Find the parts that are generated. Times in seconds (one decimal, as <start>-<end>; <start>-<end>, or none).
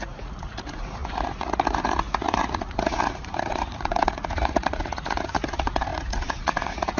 0.0-7.0